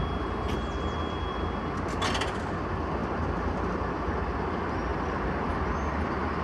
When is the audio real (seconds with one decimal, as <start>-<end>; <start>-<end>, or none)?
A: 0.0-6.4